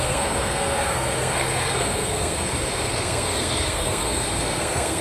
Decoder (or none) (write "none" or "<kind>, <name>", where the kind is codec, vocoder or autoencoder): codec, SNAC